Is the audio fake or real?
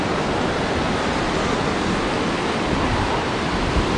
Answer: real